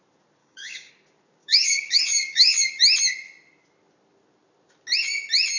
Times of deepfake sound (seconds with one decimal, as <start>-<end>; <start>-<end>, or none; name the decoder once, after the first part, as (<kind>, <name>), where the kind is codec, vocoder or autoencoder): 0.4-0.9 (codec, DAC); 1.4-2.8